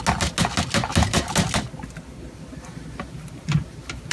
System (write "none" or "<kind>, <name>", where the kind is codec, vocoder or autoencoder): none